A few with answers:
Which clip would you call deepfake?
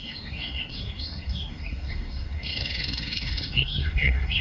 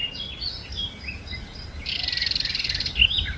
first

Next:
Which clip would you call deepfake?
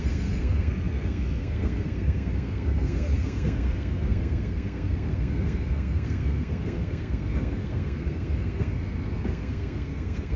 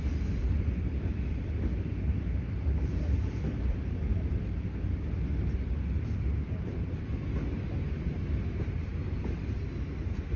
first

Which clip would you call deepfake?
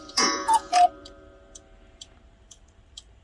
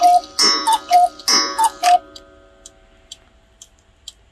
first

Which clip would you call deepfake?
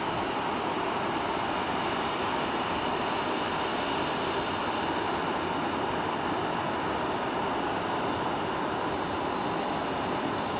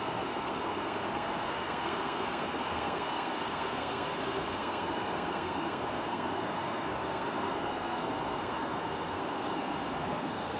second